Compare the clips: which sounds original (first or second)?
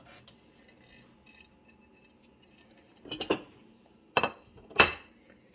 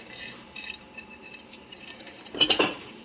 first